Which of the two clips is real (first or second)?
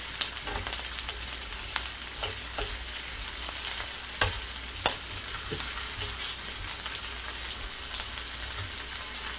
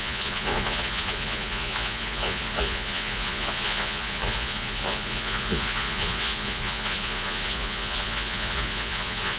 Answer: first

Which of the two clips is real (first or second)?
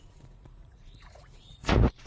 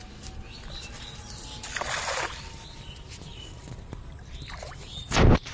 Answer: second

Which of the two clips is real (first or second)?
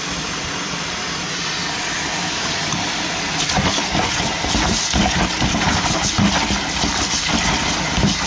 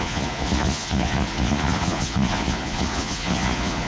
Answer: first